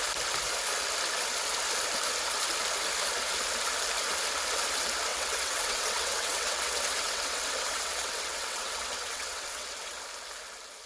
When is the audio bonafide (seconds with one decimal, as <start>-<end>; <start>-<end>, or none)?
0.0-5.1; 10.0-10.9